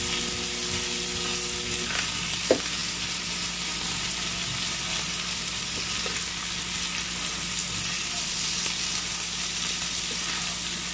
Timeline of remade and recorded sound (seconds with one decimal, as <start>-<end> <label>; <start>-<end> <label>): 0.0-10.9 recorded